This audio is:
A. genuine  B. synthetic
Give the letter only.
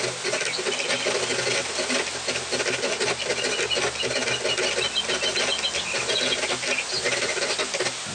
A